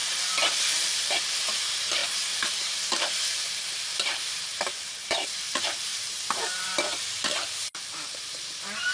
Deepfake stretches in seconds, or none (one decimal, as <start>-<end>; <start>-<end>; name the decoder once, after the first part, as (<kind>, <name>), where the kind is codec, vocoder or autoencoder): 0.0-5.9 (vocoder, BigVGAN v2); 6.4-8.9